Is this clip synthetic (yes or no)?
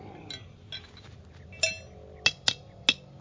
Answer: no